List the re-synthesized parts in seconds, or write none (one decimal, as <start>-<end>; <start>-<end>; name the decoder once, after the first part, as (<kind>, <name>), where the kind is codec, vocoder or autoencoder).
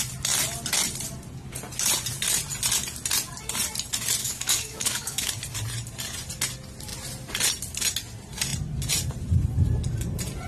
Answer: 4.2-5.3 (codec, DAC)